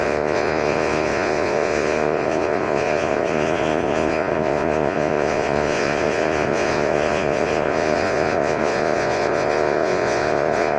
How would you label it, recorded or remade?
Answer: remade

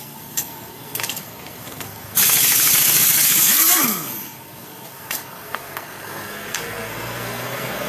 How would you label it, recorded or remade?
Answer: remade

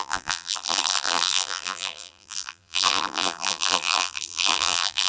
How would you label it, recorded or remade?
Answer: remade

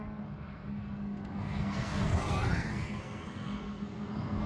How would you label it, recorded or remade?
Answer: remade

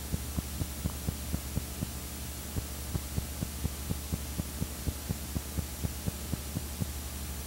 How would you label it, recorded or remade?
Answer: recorded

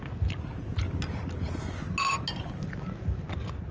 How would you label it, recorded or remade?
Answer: recorded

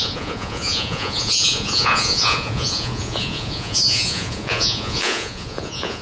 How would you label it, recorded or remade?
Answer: remade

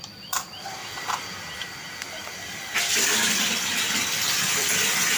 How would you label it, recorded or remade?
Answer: remade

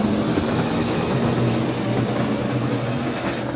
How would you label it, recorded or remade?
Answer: recorded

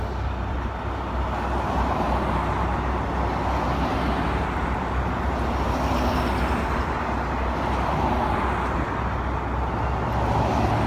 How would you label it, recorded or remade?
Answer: recorded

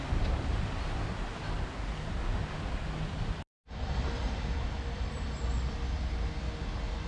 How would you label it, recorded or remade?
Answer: recorded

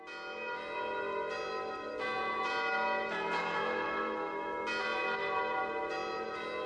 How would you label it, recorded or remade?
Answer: recorded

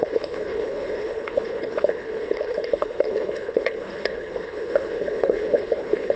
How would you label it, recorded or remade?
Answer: remade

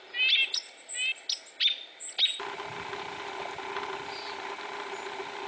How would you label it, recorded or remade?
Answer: recorded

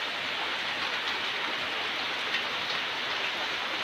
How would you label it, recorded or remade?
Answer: recorded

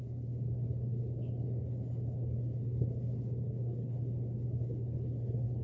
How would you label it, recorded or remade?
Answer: remade